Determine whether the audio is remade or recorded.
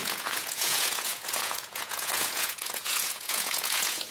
remade